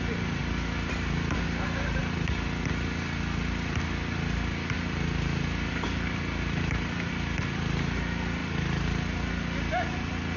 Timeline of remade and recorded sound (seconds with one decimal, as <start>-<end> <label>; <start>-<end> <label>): 0.0-10.4 recorded